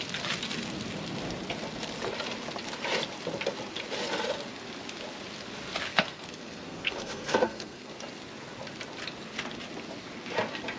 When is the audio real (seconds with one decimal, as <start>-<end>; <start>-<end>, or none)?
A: 0.0-5.9; 7.9-10.8